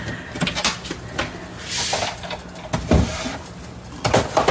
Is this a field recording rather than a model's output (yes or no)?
yes